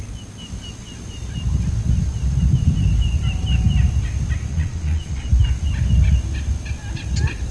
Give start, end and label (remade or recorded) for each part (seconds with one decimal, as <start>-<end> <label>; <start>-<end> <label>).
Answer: 0.0-4.5 recorded; 4.5-5.3 remade; 5.3-7.5 recorded